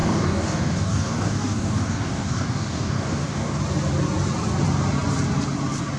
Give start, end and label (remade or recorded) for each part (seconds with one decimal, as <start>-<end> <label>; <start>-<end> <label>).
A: 0.0-3.6 remade; 3.6-6.0 recorded